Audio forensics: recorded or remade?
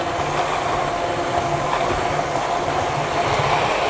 recorded